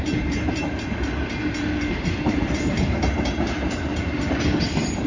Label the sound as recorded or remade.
remade